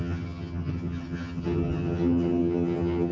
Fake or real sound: fake